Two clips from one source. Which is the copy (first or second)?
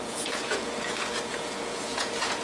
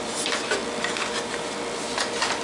first